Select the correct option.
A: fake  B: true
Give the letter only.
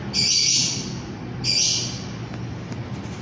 B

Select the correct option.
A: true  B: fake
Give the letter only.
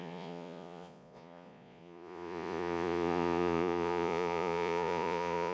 B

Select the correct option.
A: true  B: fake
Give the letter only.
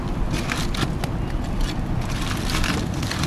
A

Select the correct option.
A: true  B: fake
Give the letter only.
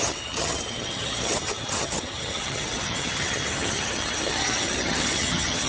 B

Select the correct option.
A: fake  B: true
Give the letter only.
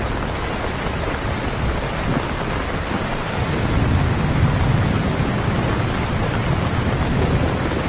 B